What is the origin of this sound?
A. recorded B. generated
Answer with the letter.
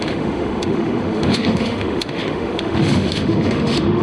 B